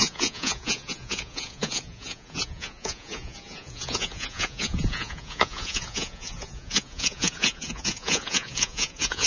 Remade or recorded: remade